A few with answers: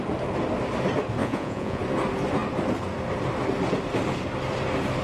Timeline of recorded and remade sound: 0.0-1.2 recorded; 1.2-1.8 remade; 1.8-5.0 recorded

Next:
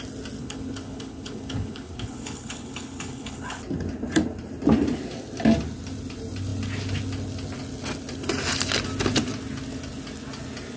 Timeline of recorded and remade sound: 0.0-0.4 recorded; 0.4-3.6 remade; 3.6-10.8 recorded

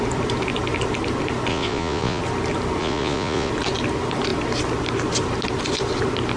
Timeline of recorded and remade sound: 0.0-1.5 recorded; 1.5-2.2 remade; 2.2-2.8 recorded; 2.8-3.5 remade; 3.5-6.4 recorded

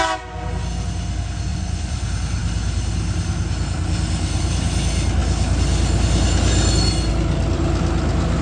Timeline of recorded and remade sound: 0.0-1.5 recorded; 1.5-2.0 remade; 2.0-8.4 recorded

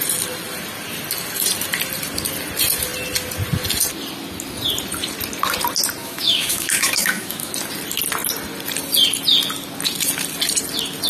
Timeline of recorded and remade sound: 0.0-6.0 recorded; 6.0-7.5 remade; 7.5-11.1 recorded